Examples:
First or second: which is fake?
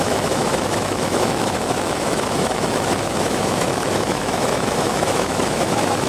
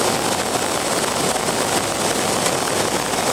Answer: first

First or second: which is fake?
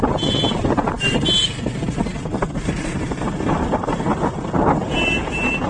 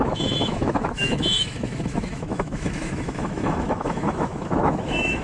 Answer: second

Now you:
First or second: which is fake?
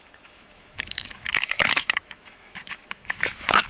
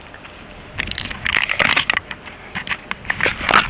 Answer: first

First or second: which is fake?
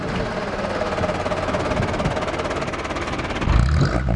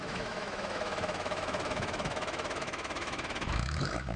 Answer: second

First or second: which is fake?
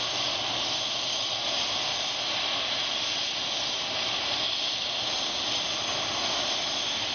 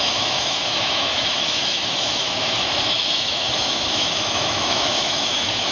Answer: second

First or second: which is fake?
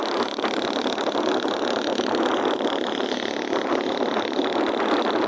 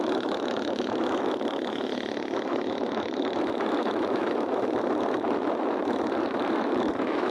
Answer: second